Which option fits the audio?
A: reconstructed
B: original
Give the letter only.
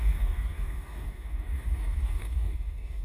A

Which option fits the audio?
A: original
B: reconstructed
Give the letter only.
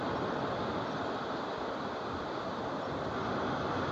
A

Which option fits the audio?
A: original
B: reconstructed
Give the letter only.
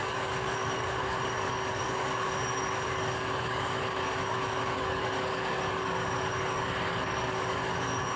B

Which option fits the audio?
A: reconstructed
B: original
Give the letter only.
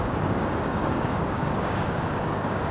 A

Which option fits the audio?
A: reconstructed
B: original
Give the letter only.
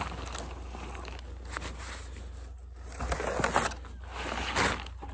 B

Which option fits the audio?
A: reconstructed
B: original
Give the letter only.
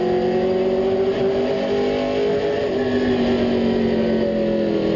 B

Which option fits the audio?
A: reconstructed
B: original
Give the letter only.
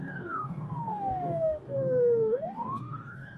A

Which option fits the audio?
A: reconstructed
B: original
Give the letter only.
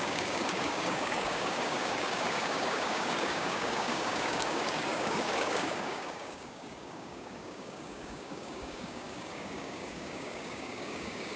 A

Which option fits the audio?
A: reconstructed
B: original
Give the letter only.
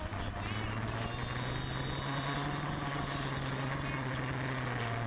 B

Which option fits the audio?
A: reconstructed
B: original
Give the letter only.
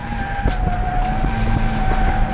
B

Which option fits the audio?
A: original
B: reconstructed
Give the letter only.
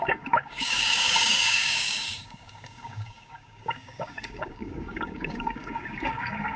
B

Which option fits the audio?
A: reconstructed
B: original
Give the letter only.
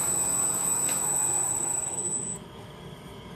A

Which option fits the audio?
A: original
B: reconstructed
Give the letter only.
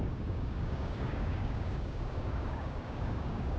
B